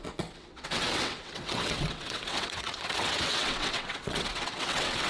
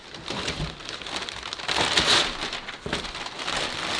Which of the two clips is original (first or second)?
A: second